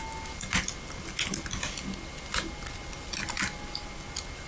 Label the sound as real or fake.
real